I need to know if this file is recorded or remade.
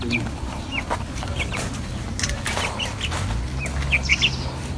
recorded